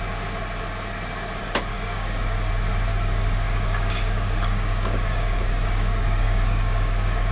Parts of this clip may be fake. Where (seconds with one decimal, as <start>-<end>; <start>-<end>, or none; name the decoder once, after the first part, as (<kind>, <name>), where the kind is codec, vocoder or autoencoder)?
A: 1.7-2.5 (codec, DAC); 2.9-7.3